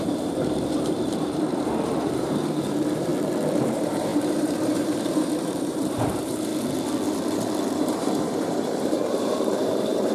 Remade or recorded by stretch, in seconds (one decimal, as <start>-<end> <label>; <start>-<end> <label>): 0.0-3.1 remade; 3.1-3.6 recorded; 3.6-6.5 remade; 6.5-7.8 recorded; 7.8-10.1 remade